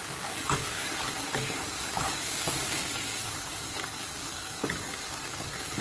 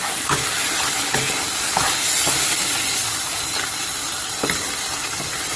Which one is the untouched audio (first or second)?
second